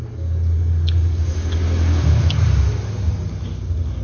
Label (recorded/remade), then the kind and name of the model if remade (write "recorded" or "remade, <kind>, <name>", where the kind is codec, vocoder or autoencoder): recorded